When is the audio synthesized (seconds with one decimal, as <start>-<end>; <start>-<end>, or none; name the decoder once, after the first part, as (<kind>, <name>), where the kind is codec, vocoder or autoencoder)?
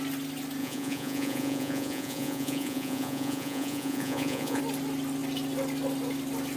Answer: 0.6-4.6 (vocoder, Vocos)